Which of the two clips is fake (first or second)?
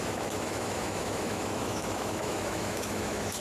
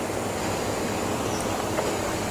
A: first